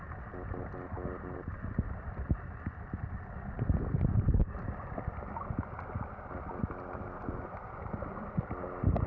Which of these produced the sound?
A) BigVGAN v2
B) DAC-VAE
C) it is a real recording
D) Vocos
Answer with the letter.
C